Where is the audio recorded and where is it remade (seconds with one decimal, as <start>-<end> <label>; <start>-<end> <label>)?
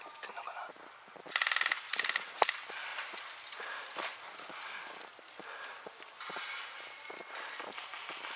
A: 0.0-8.4 recorded